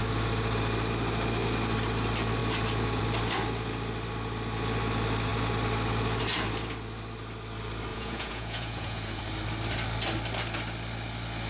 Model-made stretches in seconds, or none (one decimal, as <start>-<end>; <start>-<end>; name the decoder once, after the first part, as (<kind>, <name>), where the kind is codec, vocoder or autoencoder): 7.9-9.2 (vocoder, Vocos)

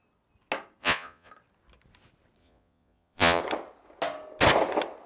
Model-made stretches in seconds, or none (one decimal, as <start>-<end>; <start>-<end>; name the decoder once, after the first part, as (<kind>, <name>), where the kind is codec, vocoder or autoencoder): 0.8-1.3 (vocoder, Vocos); 2.4-3.4

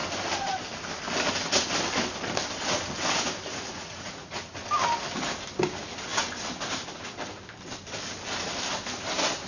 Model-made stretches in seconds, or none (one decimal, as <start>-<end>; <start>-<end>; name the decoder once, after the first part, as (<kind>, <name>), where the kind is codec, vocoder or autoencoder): 3.5-4.5 (vocoder, Vocos)

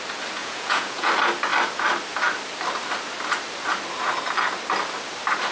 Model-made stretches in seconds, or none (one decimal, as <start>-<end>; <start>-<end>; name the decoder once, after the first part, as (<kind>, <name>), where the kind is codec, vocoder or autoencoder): 0.4-1.1 (vocoder, Vocos)

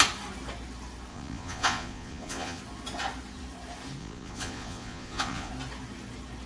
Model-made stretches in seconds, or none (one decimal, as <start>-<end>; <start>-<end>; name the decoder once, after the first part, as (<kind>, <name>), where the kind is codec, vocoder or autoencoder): 1.1-2.6 (vocoder, Vocos); 4.0-5.5